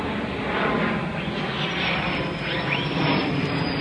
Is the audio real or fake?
real